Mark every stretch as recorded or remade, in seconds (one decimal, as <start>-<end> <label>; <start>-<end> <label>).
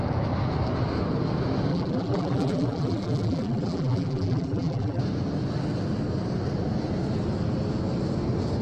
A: 0.0-1.7 recorded; 1.7-5.0 remade; 5.0-8.6 recorded